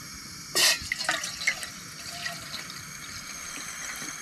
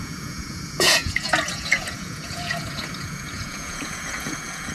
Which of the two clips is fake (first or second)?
second